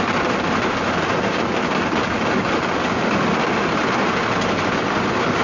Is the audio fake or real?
real